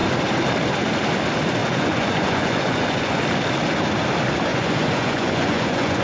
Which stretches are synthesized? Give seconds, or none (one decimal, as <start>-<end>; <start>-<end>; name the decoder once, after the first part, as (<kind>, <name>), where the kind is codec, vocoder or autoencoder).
1.6-3.2 (vocoder, Vocos); 4.5-6.0